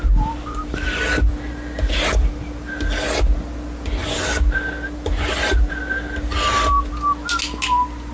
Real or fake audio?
real